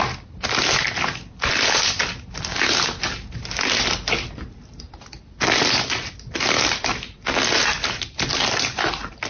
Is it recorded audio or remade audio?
recorded